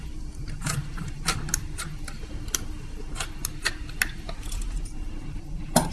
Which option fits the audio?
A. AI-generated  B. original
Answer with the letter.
B